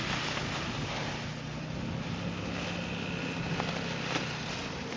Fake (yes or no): no